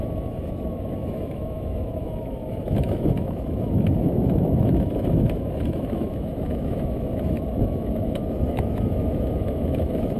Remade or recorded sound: remade